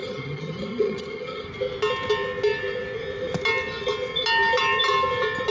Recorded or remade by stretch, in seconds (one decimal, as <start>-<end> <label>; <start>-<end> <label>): 0.0-1.5 remade; 1.5-5.5 recorded